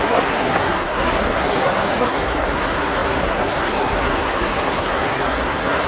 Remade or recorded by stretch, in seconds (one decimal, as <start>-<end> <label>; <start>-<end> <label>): 0.0-5.9 remade